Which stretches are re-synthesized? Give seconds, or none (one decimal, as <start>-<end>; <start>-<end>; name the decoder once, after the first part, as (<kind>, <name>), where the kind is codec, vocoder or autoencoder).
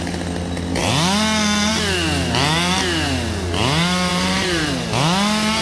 4.1-4.7 (vocoder, BigVGAN v2)